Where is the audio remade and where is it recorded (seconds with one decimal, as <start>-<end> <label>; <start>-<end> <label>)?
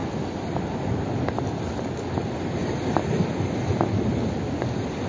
0.0-5.1 recorded